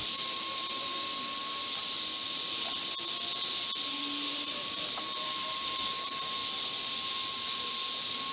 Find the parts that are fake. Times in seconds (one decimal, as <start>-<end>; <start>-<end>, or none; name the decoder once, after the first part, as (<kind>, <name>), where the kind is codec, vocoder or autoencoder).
0.0-0.9 (vocoder, BigVGAN v2); 4.3-6.4; 7.1-7.8